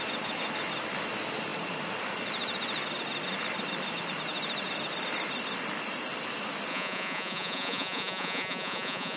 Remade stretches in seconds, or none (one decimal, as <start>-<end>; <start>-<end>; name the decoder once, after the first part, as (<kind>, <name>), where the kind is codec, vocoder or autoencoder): 6.7-9.2 (vocoder, Vocos)